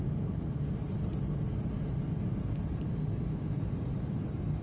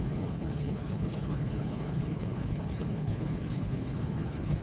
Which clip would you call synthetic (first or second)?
second